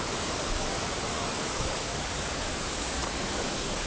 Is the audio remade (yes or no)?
yes